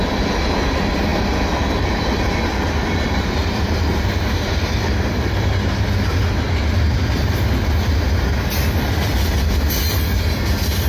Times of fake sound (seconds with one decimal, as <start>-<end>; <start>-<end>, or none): 3.4-5.5